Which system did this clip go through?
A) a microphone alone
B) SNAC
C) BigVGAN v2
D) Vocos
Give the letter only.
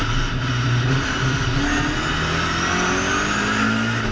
A